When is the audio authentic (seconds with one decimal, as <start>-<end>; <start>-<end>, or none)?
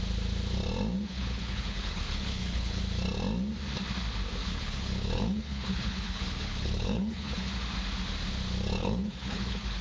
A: 0.0-1.1; 2.8-4.4; 7.5-8.8